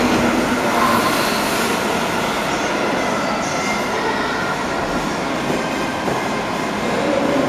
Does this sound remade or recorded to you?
recorded